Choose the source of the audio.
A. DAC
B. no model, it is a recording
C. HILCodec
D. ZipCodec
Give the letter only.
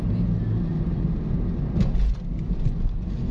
B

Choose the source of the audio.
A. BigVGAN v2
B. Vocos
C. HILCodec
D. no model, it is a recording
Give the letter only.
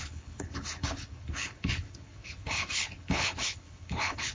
C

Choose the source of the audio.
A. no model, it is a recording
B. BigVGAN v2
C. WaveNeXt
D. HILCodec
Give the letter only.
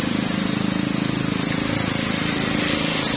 A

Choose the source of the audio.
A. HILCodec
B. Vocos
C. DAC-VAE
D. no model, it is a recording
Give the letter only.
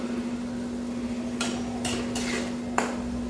D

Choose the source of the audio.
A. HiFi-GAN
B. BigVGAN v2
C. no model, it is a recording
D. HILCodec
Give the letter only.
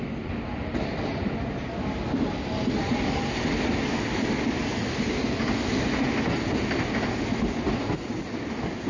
C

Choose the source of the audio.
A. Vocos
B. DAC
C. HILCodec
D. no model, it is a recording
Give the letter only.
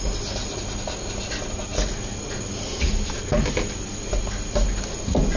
D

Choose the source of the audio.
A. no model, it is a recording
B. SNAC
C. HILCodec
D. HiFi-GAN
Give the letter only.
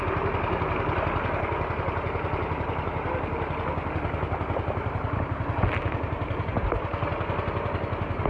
A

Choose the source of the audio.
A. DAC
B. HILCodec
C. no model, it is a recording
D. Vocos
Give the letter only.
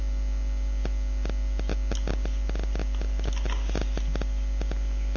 C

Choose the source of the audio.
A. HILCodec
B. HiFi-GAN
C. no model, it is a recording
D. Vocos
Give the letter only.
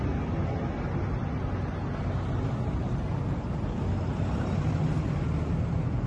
C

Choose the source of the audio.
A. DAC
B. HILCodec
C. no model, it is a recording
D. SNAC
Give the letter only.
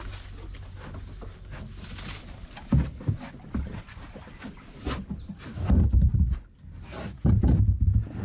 C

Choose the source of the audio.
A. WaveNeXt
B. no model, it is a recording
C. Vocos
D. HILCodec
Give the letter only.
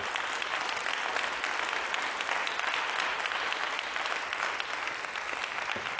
B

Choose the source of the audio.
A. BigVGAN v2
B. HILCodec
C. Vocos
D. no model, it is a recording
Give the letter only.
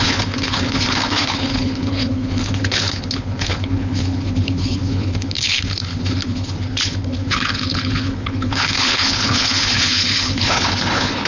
B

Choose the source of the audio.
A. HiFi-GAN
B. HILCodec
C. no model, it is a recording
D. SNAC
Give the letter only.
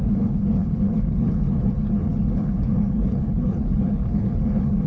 B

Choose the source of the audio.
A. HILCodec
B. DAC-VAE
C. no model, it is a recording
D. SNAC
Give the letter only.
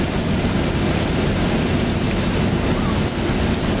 C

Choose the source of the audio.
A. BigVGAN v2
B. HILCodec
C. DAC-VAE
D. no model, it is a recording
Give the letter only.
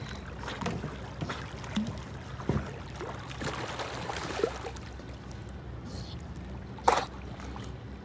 D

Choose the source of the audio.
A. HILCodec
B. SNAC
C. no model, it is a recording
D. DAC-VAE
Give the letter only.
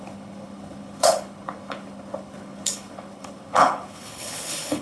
A